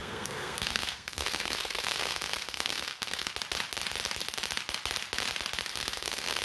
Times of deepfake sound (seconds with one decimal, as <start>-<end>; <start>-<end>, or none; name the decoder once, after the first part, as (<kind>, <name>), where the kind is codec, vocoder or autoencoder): 0.0-3.3 (codec, SNAC); 5.7-6.4